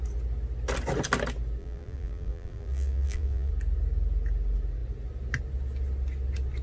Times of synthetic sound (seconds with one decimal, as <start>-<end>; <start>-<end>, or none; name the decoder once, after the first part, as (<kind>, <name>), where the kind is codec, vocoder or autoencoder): 1.6-3.5 (vocoder, BigVGAN v2)